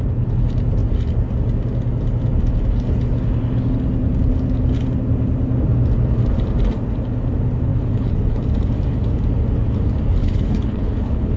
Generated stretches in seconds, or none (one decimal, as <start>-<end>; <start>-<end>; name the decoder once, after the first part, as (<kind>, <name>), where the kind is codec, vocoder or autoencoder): 7.7-8.4 (codec, HILCodec); 10.2-11.4